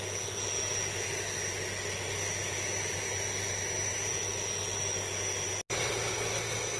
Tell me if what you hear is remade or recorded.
recorded